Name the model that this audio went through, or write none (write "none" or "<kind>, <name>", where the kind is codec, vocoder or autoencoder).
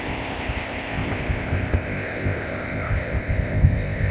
codec, ZipCodec